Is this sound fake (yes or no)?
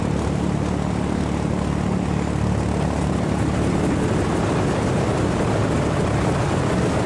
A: no